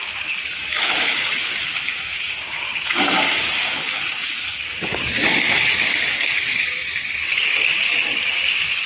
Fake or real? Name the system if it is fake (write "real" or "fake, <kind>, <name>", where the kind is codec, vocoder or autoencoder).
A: fake, codec, DAC